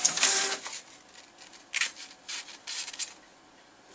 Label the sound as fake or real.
real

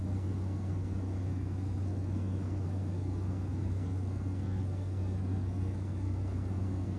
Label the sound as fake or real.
fake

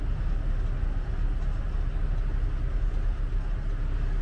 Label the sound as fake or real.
real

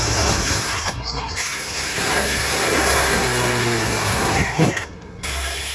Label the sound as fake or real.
fake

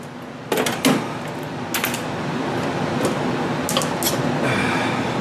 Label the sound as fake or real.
real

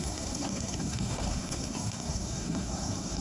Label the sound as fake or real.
fake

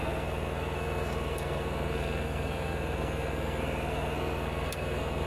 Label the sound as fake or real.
fake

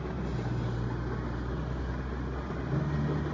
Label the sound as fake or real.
real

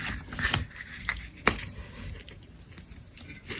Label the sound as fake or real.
real